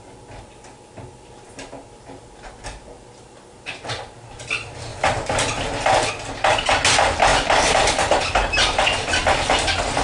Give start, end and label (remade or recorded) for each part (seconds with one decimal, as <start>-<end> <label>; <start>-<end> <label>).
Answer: 0.0-4.9 recorded; 4.9-6.1 remade; 6.1-7.3 recorded; 7.3-9.1 remade; 9.1-10.0 recorded